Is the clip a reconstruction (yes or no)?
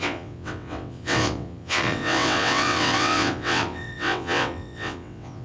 yes